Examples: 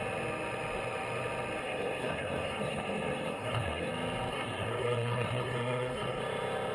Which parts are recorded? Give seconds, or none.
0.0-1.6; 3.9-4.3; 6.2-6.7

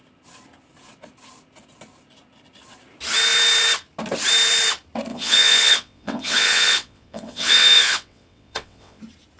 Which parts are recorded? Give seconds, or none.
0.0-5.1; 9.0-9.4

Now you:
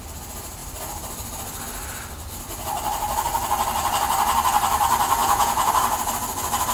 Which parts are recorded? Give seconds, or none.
0.0-5.2; 5.7-6.7

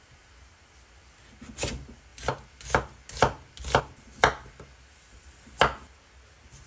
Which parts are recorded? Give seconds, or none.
0.0-6.7

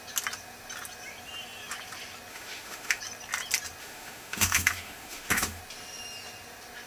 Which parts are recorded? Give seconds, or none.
0.0-2.3; 3.0-3.8; 5.6-6.9

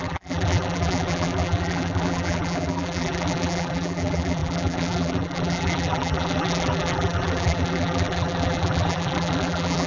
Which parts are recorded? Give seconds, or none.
none